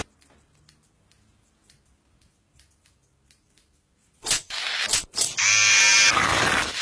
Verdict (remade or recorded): recorded